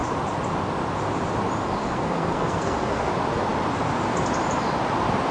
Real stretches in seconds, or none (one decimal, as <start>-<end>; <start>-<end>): 0.0-1.8; 3.1-5.3